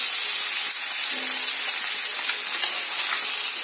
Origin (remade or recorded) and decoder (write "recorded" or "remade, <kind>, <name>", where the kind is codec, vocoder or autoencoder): recorded